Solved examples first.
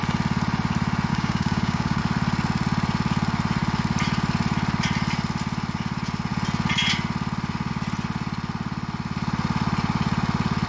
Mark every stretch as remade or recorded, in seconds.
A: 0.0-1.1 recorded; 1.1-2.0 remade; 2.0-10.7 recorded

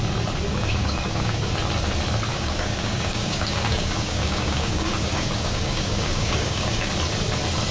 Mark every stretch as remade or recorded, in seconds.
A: 0.0-0.5 recorded; 0.5-1.5 remade; 1.5-2.3 recorded; 2.3-6.9 remade; 6.9-7.7 recorded

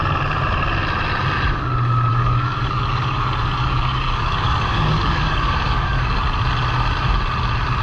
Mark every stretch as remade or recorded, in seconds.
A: 0.0-2.1 recorded; 2.1-6.2 remade; 6.2-7.8 recorded

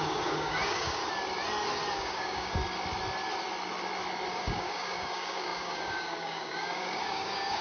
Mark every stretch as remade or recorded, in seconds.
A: 0.0-1.0 remade; 1.0-1.9 recorded; 1.9-2.6 remade; 2.6-4.3 recorded; 4.3-7.6 remade

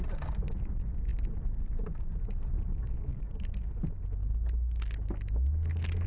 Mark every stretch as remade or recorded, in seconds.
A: 0.0-3.1 recorded; 3.1-3.7 remade; 3.7-6.1 recorded